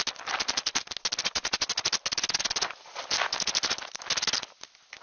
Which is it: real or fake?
real